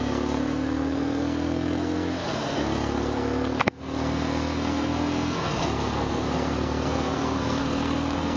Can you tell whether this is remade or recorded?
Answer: remade